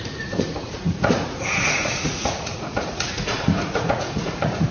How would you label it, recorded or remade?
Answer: remade